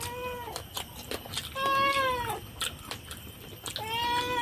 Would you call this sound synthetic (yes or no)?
no